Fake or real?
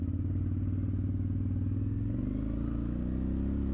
real